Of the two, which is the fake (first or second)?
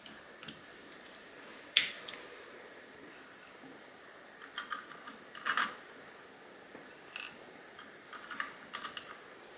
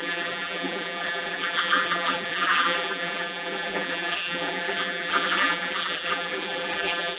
second